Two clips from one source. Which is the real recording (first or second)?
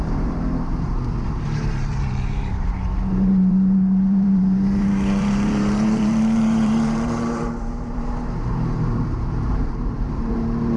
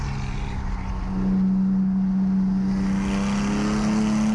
second